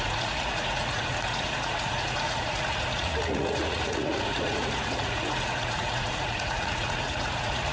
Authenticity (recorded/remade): remade